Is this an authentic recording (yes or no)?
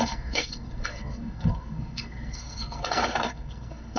no